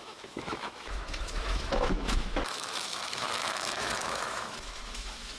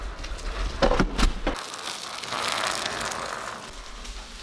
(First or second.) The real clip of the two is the second